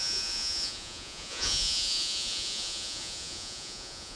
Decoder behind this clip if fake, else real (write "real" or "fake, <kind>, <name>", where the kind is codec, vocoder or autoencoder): fake, vocoder, Vocos